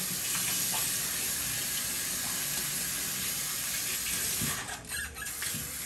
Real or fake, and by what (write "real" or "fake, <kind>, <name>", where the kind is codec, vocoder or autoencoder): real